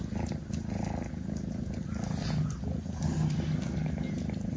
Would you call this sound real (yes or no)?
yes